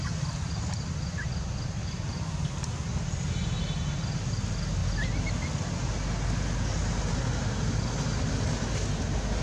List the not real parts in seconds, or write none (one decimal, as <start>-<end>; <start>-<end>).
none